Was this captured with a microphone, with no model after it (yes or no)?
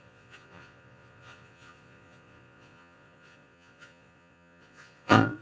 no